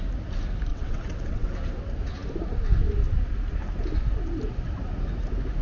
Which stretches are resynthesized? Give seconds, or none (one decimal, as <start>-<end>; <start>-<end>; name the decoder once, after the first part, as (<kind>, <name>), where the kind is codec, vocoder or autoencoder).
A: 0.7-1.5 (vocoder, WaveNeXt)